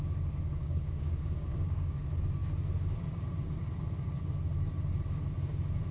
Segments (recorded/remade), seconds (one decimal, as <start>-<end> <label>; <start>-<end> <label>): 0.0-0.6 recorded; 0.6-2.0 remade; 2.0-5.9 recorded